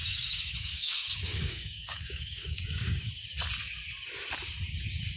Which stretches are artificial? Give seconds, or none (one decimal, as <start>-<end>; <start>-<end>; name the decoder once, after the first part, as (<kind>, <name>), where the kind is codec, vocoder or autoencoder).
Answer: 0.0-3.1 (codec, DAC)